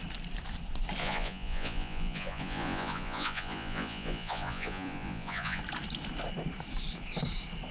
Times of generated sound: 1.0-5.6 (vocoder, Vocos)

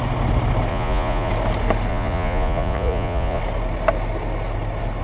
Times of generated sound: 0.7-1.3 (vocoder, Vocos); 1.9-3.4

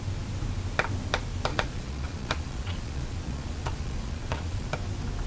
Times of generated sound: 1.5-4.7 (vocoder, Vocos)

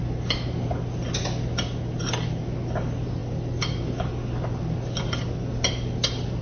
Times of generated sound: none

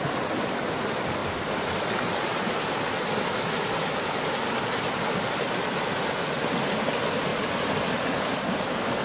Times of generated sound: none

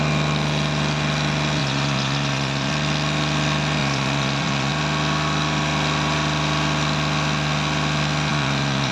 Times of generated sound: 1.6-2.7 (vocoder, Vocos); 3.8-4.7; 8.3-8.9